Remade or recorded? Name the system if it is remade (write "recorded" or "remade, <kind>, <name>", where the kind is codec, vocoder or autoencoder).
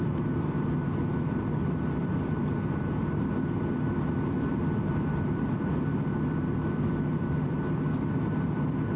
remade, vocoder, BigVGAN v2